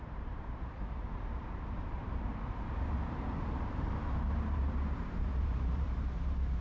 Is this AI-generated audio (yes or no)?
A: yes